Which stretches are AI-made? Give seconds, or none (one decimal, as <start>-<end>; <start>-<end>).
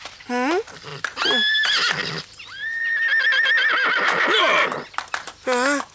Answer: none